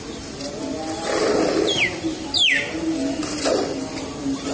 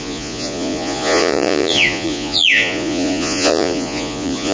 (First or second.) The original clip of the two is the first